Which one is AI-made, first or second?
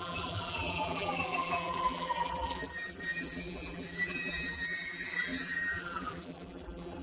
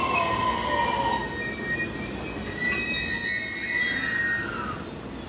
first